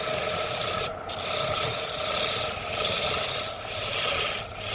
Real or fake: fake